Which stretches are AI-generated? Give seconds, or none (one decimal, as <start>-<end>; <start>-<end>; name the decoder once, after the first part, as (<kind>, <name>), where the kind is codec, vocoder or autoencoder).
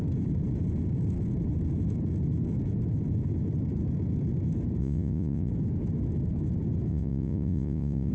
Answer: 4.8-5.5 (vocoder, Vocos); 6.9-8.1